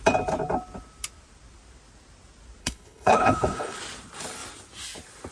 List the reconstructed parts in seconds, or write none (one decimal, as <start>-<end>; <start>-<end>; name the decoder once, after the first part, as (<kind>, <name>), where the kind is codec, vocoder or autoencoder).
2.6-3.8 (codec, HILCodec)